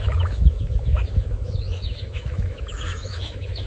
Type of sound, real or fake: fake